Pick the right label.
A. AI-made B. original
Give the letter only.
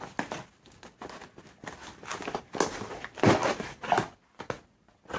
B